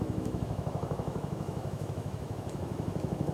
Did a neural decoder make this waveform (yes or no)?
yes